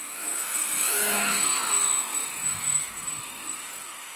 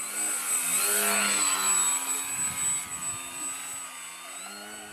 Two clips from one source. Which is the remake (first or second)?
first